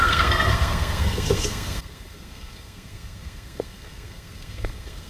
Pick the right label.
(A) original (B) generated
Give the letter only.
B